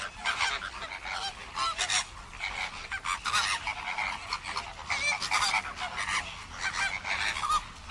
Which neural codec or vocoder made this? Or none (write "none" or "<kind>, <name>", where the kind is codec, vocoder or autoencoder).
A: none